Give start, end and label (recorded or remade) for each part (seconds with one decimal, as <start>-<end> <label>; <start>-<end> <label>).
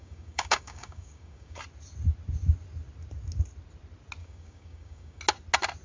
0.0-1.6 remade; 1.6-4.2 recorded; 4.2-5.2 remade; 5.2-5.8 recorded